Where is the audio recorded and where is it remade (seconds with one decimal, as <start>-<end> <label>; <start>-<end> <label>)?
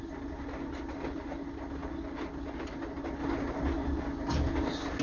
0.0-5.0 recorded